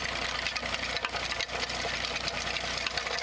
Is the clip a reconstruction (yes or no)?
no